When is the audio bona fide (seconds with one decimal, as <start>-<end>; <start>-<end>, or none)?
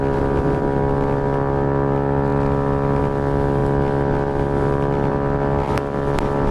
0.0-6.5